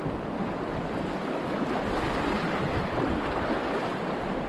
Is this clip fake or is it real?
real